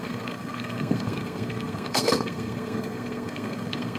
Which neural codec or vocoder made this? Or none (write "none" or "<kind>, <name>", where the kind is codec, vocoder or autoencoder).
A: codec, SNAC